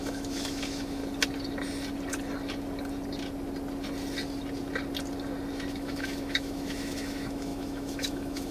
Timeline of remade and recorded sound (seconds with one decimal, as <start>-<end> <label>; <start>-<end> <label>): 0.0-1.0 remade; 1.0-5.7 recorded; 5.7-8.5 remade